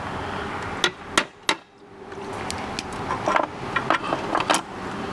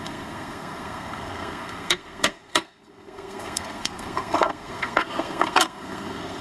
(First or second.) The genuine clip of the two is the first